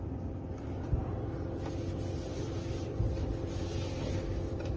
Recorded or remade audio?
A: recorded